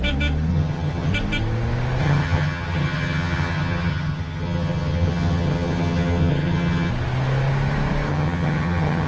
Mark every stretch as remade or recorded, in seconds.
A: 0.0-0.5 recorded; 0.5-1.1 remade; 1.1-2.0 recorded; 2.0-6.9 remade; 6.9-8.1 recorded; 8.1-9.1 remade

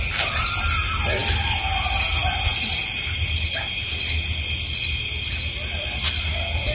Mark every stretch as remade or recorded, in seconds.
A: 0.0-6.7 recorded

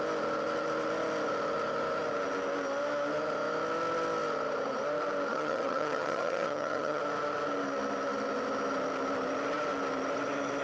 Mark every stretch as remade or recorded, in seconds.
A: 0.0-5.3 recorded; 5.3-7.0 remade; 7.0-10.6 recorded

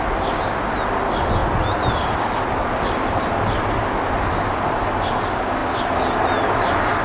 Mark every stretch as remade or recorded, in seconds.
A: 0.0-7.0 recorded

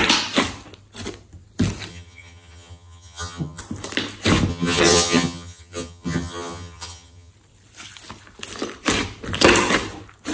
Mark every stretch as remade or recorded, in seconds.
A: 0.0-1.9 recorded; 1.9-3.6 remade; 3.6-4.5 recorded; 4.5-7.3 remade; 7.3-10.3 recorded

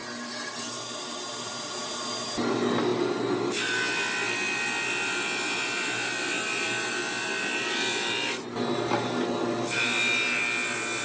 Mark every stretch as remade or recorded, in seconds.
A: 0.0-11.0 recorded

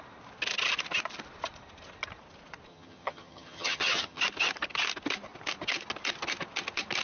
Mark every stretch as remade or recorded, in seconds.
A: 0.0-2.7 recorded; 2.7-4.2 remade; 4.2-7.0 recorded